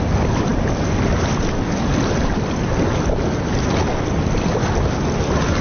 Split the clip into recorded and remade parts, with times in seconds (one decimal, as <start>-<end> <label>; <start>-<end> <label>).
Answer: 0.0-5.6 recorded